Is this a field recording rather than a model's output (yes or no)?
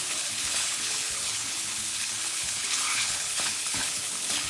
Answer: no